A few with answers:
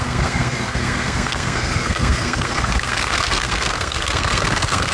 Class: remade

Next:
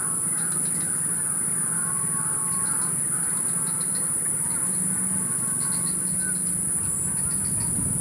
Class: recorded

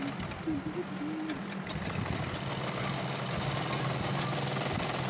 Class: recorded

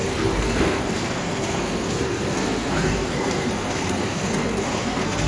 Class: remade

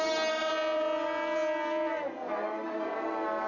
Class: recorded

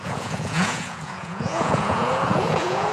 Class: remade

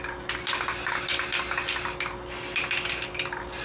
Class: recorded